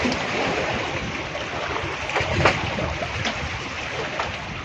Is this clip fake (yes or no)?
no